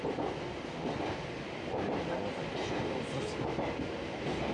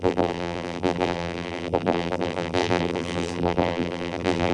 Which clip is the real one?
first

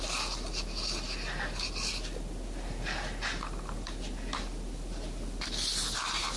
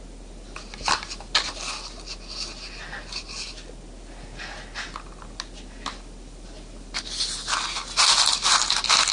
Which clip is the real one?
second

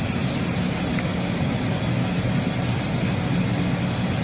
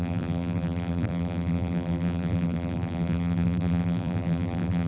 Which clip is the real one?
first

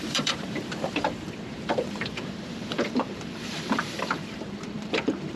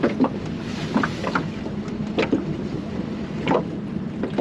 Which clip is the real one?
second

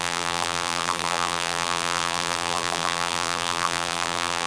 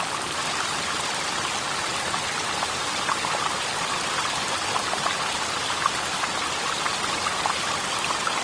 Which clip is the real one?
second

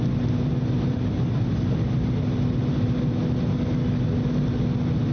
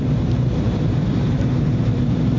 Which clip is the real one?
first